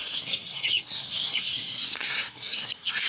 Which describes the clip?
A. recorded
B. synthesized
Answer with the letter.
B